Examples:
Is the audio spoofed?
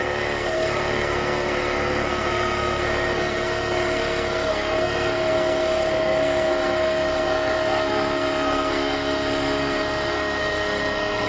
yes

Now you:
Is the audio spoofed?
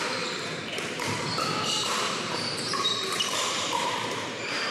yes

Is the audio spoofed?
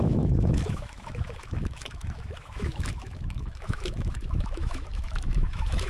yes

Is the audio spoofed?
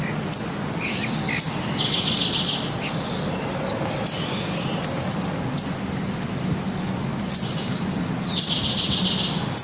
no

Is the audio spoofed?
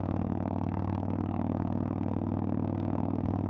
yes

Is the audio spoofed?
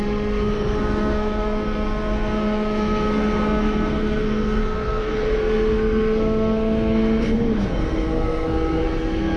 yes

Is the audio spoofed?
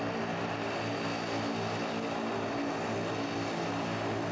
no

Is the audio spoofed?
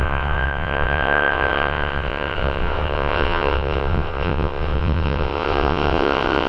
yes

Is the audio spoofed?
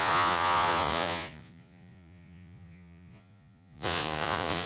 yes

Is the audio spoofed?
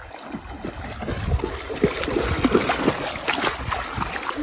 no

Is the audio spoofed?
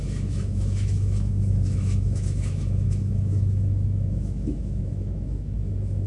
yes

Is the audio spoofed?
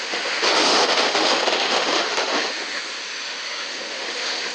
yes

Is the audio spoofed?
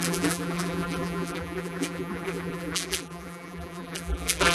yes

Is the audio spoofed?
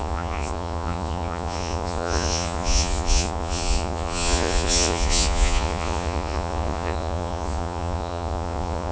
yes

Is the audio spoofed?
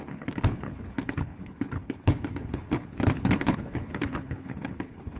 yes